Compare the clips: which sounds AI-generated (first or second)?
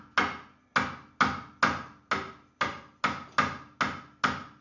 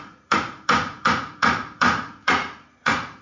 second